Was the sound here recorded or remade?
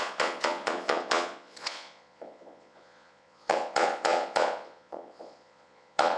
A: remade